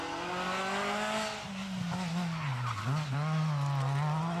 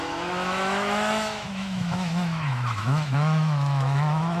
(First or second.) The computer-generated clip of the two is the second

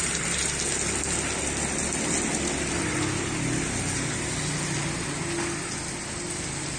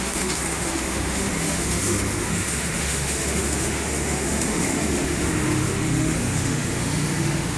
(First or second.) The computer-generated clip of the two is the second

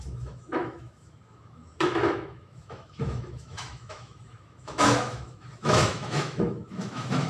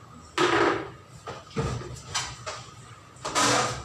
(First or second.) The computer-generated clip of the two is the first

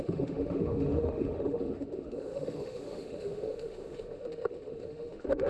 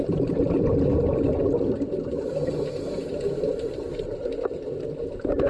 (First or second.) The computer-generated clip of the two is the first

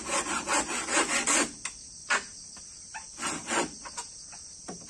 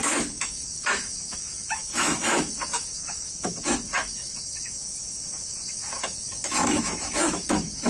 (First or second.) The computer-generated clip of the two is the second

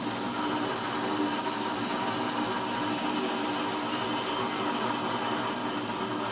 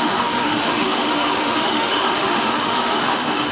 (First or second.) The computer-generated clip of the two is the second